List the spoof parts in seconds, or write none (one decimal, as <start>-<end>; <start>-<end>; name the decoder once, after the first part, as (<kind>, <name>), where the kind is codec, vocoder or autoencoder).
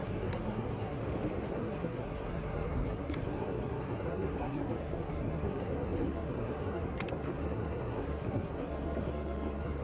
0.0-1.0 (codec, SNAC); 1.5-9.8